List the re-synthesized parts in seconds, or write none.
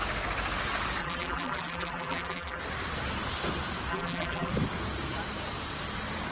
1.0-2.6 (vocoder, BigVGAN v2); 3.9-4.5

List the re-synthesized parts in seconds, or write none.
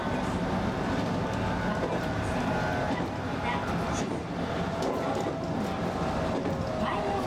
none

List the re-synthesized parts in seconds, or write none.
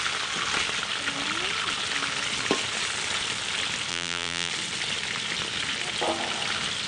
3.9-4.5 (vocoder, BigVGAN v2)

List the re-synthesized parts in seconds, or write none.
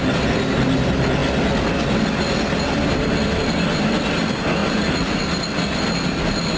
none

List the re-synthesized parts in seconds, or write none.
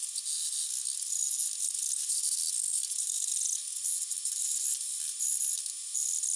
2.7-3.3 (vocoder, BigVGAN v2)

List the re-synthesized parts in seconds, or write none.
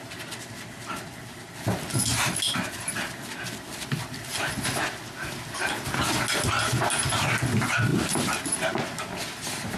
none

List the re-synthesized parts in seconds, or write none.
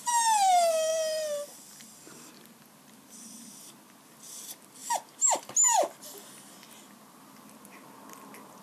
none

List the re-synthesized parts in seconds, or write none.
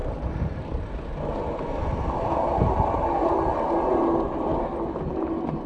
none